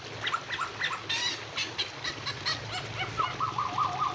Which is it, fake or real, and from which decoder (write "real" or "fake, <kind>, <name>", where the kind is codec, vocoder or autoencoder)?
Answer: real